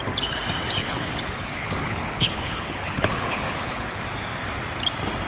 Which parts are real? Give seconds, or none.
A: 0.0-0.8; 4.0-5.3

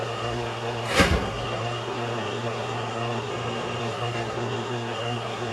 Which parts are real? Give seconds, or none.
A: 3.3-3.8